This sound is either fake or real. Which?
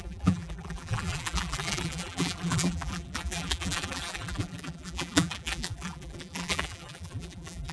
fake